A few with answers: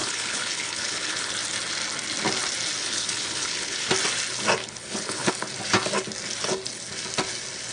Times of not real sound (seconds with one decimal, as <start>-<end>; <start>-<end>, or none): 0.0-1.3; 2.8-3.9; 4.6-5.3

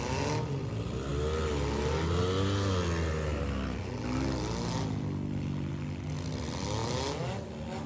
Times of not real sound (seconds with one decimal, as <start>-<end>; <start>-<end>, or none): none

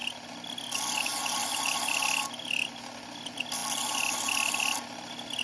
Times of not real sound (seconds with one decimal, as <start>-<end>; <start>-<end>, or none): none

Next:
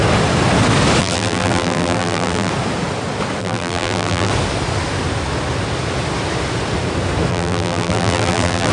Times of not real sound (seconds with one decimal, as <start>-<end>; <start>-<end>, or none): 1.0-2.5; 3.4-4.3; 7.3-8.7

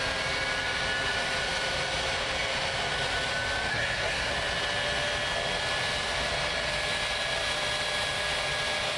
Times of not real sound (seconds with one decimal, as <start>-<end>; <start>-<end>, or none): 3.7-4.3